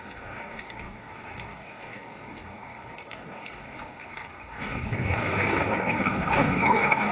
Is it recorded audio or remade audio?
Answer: remade